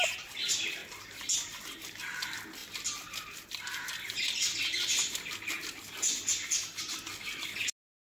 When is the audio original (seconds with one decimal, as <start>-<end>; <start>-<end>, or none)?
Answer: 0.0-8.0